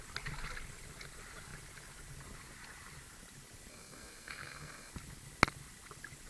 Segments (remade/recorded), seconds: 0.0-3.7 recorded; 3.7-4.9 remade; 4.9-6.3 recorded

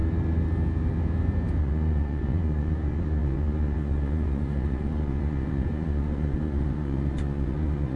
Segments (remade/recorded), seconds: 0.0-1.6 recorded; 1.6-8.0 remade